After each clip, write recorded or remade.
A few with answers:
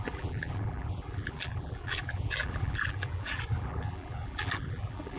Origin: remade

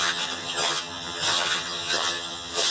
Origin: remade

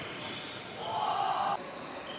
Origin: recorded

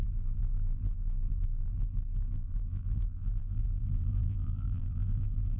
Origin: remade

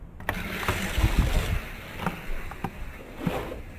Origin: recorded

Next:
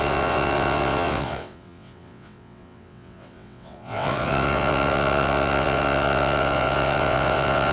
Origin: remade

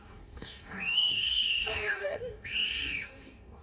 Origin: remade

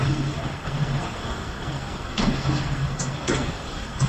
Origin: remade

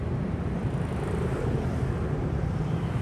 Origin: remade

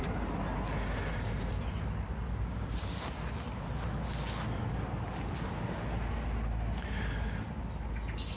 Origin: recorded